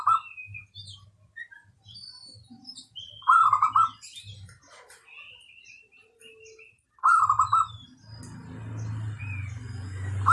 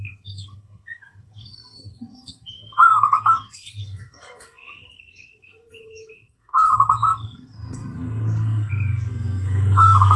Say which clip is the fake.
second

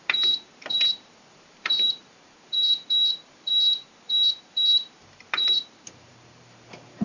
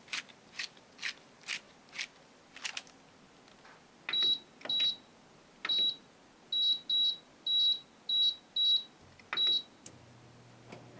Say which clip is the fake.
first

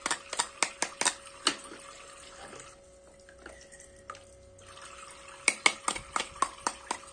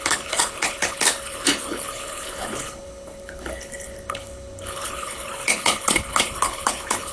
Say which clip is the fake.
second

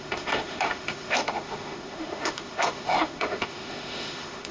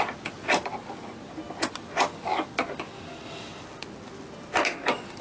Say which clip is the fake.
first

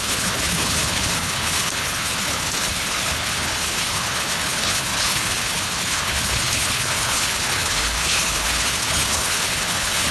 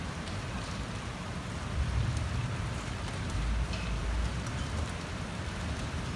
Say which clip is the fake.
first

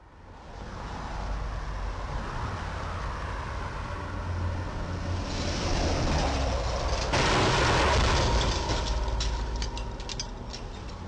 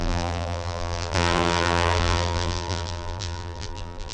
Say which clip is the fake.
second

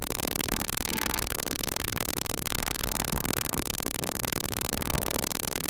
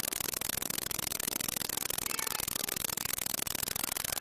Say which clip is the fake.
first